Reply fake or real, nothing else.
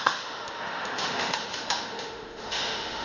fake